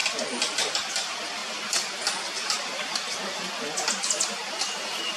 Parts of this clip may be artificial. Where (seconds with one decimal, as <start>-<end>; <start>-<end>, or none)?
0.0-1.4; 4.5-5.2